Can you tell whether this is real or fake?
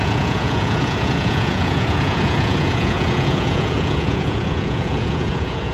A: fake